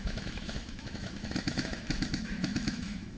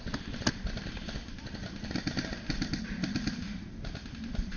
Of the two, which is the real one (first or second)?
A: second